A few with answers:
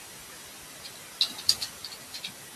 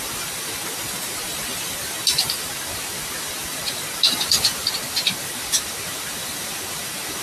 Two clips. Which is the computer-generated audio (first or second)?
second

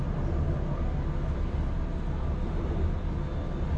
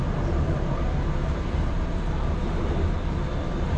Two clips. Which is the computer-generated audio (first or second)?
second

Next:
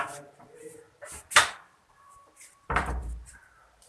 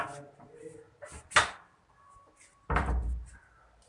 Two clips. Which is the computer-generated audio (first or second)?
first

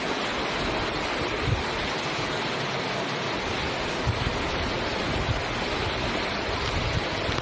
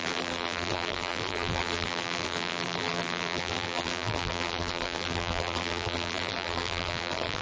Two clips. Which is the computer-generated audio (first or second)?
second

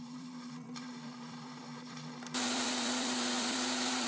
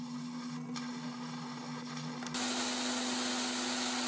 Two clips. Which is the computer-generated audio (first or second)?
first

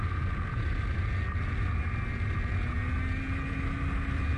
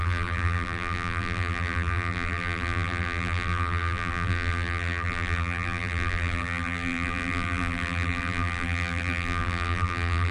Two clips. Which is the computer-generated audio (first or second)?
second